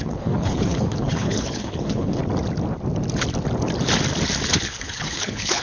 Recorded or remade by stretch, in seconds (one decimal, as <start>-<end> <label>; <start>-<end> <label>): 0.0-2.2 remade; 2.2-4.5 recorded; 4.5-5.6 remade